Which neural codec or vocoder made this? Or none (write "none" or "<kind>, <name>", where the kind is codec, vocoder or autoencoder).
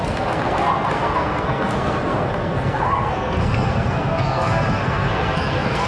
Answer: codec, SNAC